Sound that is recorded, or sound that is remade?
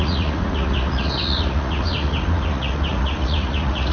remade